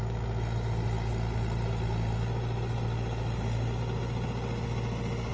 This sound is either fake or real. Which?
real